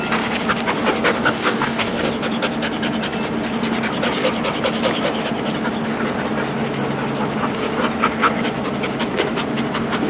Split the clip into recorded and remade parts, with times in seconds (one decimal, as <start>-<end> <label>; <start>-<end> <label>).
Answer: 0.0-1.1 recorded; 1.1-2.1 remade; 2.1-10.1 recorded